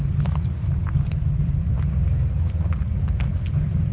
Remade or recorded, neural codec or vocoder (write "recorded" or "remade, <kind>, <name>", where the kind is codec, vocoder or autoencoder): recorded